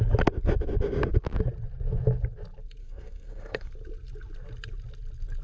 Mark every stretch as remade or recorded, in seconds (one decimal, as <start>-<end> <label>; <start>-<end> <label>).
0.0-2.8 recorded; 2.8-3.7 remade; 3.7-5.4 recorded